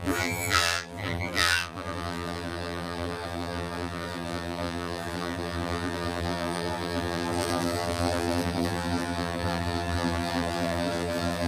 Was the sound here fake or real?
fake